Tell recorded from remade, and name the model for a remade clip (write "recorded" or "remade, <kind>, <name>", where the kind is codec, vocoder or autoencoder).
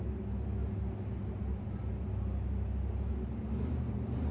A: recorded